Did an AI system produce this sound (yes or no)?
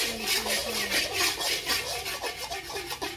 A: no